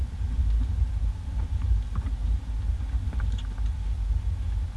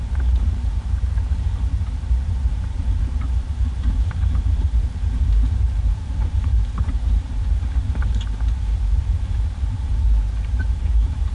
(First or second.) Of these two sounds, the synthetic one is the second